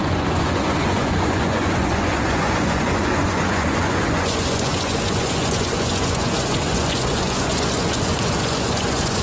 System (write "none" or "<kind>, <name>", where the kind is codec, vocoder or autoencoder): vocoder, Vocos